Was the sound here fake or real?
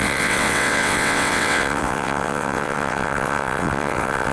fake